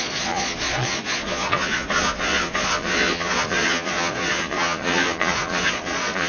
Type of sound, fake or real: fake